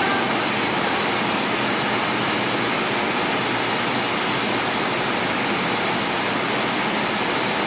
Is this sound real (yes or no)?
yes